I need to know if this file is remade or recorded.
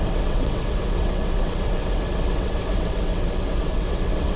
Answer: remade